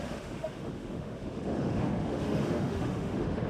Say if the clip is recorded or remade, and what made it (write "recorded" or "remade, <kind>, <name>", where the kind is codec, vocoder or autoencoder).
remade, autoencoder, DAC-VAE